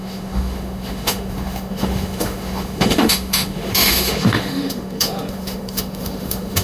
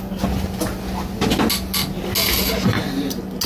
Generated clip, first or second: first